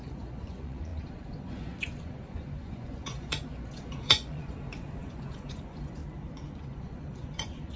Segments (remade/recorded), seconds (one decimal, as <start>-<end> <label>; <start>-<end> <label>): 0.0-6.0 remade; 6.0-6.6 recorded; 6.6-7.8 remade